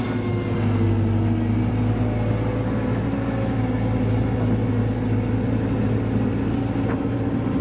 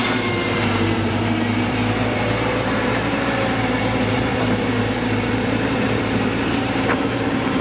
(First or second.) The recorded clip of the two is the first